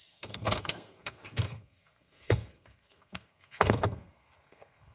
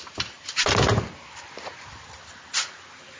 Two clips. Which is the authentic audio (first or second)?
second